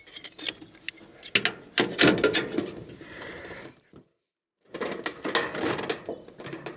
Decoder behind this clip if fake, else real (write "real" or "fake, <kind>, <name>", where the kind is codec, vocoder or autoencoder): real